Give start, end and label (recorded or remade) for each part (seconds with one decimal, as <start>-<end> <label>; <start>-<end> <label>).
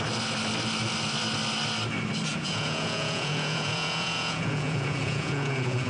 0.0-2.3 recorded; 2.3-5.9 remade